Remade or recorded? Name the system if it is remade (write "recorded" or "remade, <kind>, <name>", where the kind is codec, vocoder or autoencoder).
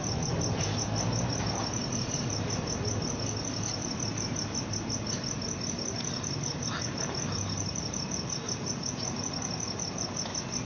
recorded